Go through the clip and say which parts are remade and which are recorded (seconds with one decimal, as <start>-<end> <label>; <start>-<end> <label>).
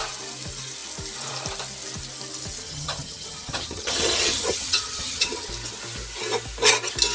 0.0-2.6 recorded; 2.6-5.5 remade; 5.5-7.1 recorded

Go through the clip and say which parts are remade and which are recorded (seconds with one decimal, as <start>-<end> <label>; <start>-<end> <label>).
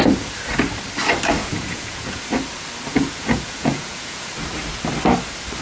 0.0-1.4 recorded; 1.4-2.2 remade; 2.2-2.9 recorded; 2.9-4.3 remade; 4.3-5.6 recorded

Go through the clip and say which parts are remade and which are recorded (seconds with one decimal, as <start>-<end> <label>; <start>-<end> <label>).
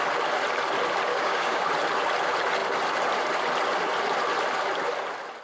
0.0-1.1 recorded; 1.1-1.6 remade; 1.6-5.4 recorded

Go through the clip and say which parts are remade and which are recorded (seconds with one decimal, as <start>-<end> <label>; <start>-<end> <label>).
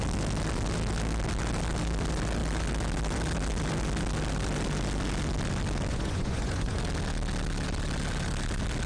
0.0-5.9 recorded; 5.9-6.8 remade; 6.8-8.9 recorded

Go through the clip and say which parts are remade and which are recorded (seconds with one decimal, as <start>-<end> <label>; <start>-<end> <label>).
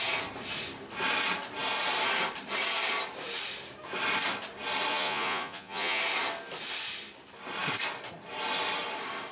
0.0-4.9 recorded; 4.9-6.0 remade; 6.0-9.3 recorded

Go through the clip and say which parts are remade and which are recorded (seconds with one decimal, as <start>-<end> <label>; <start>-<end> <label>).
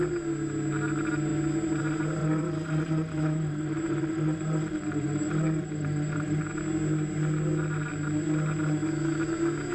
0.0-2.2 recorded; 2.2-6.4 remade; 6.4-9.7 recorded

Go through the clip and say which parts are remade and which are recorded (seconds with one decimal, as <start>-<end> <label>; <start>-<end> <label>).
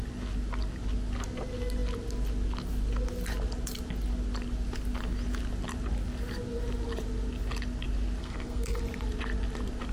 0.0-8.2 recorded; 8.2-8.8 remade; 8.8-9.9 recorded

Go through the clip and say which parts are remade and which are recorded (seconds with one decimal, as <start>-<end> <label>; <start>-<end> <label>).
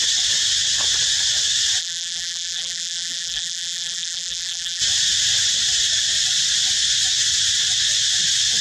0.0-1.8 recorded; 1.8-4.8 remade; 4.8-8.6 recorded